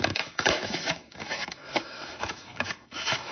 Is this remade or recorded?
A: remade